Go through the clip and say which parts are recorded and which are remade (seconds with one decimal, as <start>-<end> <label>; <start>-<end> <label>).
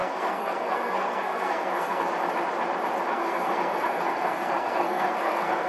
0.0-2.1 remade; 2.1-3.1 recorded; 3.1-5.7 remade